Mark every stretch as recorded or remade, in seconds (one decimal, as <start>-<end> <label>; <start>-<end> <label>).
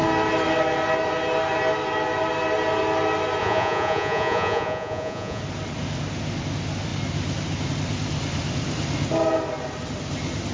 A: 0.0-3.4 recorded; 3.4-5.4 remade; 5.4-10.5 recorded